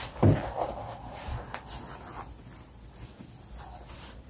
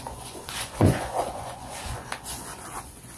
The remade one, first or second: second